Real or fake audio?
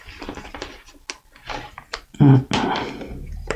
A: real